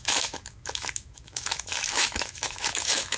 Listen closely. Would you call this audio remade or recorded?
remade